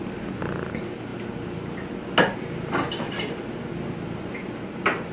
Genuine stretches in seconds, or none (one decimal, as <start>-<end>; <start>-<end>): 0.0-5.1

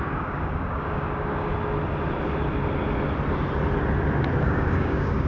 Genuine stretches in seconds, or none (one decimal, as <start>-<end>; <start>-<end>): 1.5-4.4

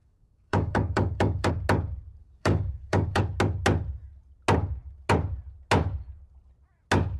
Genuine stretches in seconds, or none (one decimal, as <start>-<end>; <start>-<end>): 1.5-2.2; 3.2-7.2

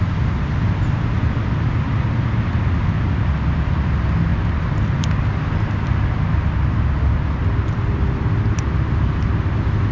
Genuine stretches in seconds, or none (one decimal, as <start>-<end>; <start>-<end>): 0.0-9.9

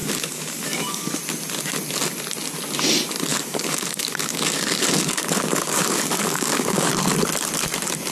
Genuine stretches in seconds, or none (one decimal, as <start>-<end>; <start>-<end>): 1.2-3.3; 6.9-8.1

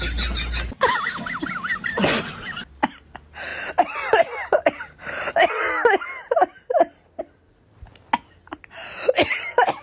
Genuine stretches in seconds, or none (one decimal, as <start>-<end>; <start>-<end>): 0.0-9.8

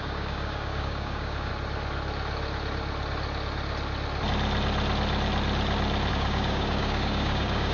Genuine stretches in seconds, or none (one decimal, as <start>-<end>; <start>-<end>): 1.5-6.1

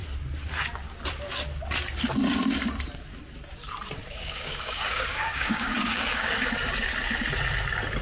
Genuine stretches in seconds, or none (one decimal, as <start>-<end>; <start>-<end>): 0.0-4.0; 6.5-8.0